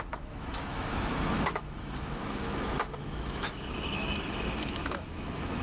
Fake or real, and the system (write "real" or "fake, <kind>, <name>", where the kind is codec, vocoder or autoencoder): fake, autoencoder, DAC-VAE